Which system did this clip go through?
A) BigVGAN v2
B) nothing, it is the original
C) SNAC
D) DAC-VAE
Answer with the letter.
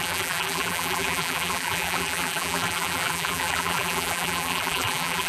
A